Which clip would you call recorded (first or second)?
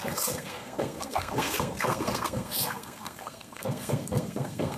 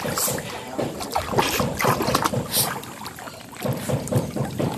second